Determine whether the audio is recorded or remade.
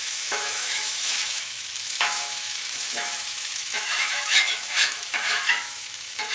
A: remade